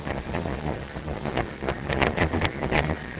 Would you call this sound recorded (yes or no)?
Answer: no